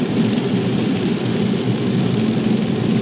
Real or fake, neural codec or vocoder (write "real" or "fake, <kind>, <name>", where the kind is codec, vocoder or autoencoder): real